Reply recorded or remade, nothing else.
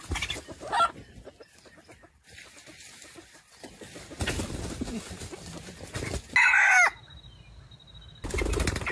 recorded